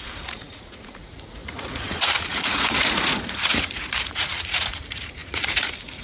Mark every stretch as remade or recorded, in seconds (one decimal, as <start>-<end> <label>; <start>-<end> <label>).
0.0-6.0 remade